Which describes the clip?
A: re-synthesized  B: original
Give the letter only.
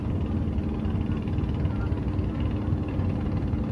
A